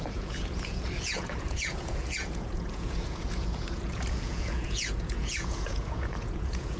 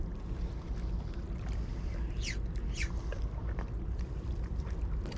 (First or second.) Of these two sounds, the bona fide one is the second